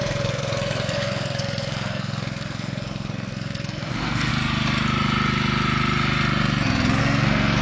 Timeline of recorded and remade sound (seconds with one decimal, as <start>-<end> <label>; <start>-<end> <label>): 0.0-4.3 remade; 4.3-7.0 recorded; 7.0-7.6 remade